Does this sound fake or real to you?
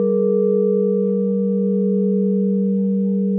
real